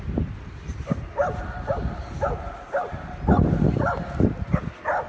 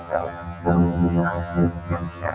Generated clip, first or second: second